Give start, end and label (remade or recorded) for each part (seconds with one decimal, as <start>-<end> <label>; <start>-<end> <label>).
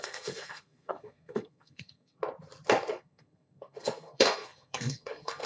0.0-2.2 remade; 2.2-2.9 recorded; 2.9-5.5 remade